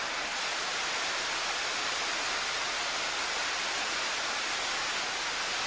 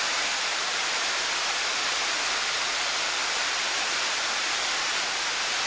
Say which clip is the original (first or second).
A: first